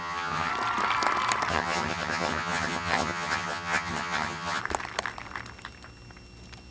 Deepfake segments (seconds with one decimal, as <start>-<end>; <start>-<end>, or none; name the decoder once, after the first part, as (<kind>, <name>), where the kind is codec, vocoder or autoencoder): 0.0-0.5 (vocoder, HiFi-GAN); 1.5-4.6